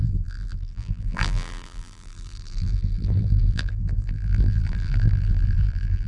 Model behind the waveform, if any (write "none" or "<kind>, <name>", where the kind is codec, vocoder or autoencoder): vocoder, BigVGAN v2